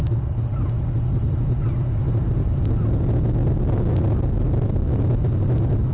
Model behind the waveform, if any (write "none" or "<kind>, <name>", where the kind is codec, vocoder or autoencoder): none